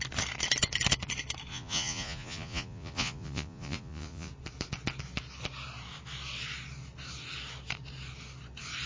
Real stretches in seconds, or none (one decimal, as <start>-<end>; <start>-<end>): 0.0-1.5; 4.3-8.9